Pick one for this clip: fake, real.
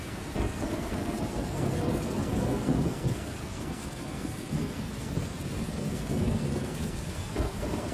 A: fake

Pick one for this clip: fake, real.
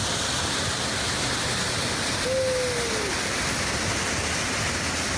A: real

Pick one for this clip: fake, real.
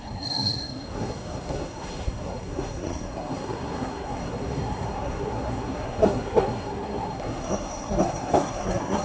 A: fake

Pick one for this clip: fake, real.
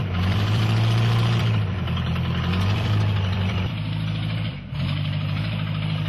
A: fake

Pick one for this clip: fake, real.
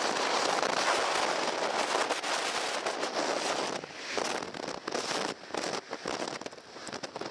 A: real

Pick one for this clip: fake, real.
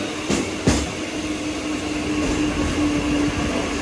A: real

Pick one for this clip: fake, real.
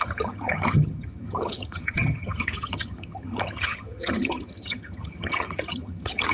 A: fake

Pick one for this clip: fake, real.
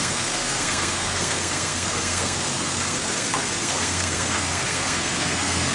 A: fake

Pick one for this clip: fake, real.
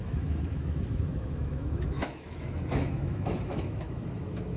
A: fake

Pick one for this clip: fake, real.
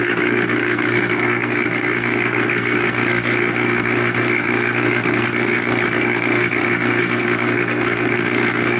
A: fake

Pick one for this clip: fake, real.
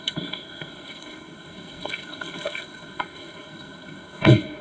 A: fake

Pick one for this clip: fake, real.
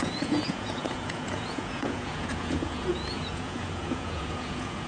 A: fake